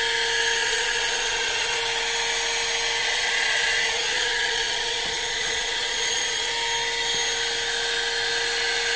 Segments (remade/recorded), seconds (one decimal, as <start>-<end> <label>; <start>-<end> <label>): 0.0-0.6 recorded; 0.6-1.8 remade; 1.8-3.0 recorded; 3.0-6.5 remade; 6.5-9.0 recorded